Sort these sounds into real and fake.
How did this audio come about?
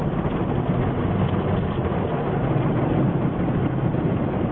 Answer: real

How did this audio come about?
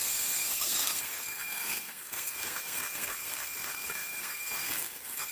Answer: fake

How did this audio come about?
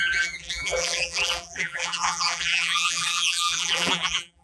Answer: fake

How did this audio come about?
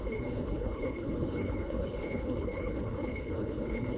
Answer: fake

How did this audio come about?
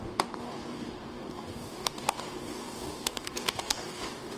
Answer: fake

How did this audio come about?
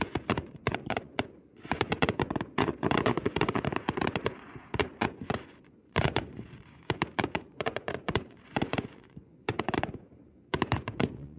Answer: fake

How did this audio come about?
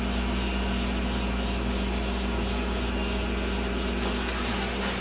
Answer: real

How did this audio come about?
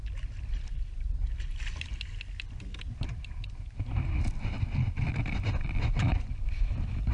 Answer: real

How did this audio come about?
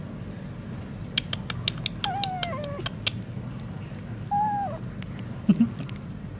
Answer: real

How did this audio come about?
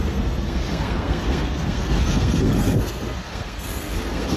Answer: fake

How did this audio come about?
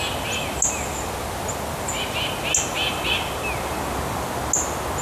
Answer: real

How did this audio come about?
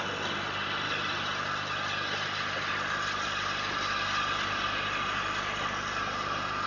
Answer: real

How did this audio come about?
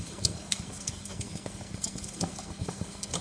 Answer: fake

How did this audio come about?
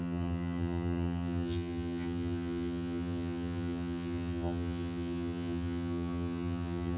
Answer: fake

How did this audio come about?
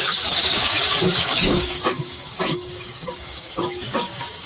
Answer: fake